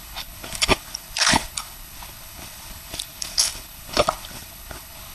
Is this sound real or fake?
fake